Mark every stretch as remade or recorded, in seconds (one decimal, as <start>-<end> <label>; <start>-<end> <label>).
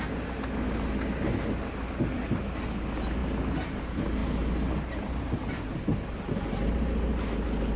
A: 0.0-7.8 recorded